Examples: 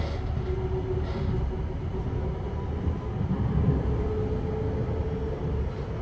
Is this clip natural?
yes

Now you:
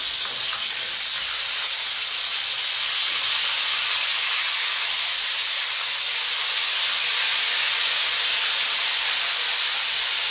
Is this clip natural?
yes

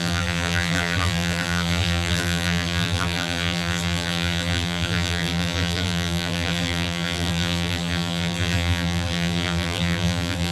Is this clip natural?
no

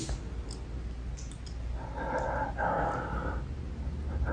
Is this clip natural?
yes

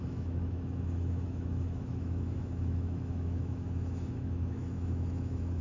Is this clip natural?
no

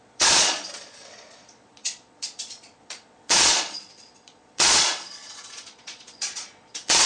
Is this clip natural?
no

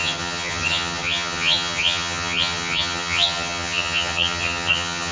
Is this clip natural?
no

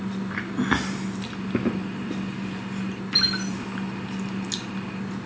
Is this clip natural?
yes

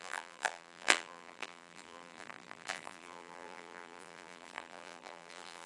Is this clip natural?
no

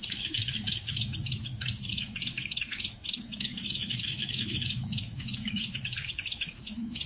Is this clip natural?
no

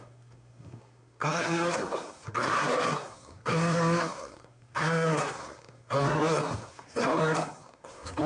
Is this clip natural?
no